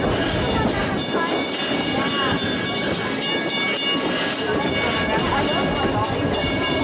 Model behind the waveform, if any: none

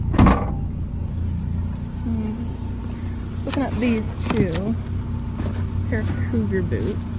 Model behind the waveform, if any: none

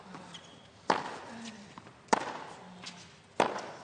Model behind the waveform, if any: none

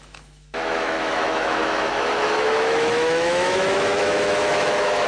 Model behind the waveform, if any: autoencoder, DAC-VAE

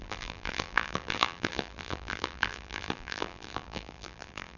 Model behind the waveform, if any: vocoder, BigVGAN v2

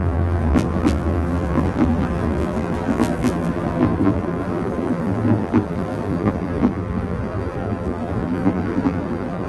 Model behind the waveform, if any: vocoder, BigVGAN v2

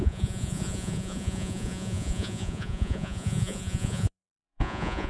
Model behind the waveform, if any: vocoder, Vocos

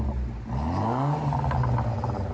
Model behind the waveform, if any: none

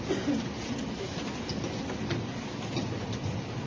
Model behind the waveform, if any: none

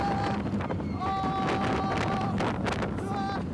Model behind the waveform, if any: none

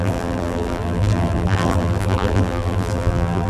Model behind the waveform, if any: vocoder, BigVGAN v2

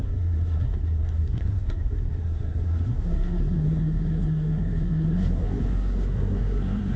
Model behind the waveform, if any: codec, SNAC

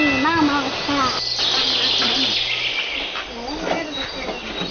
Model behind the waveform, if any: none